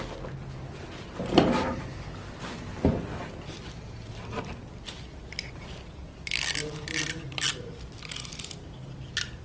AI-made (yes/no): no